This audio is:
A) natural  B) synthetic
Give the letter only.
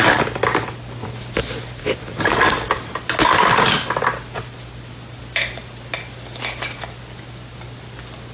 A